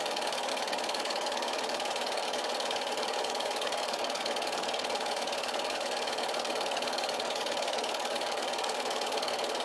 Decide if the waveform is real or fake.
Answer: fake